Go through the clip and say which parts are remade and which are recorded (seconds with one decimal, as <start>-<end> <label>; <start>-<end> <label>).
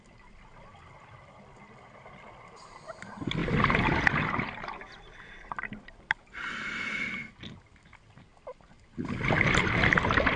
0.0-10.4 recorded